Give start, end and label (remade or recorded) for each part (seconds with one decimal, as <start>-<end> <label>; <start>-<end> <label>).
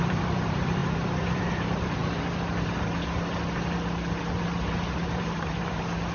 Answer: 0.0-2.0 remade; 2.0-5.1 recorded; 5.1-6.1 remade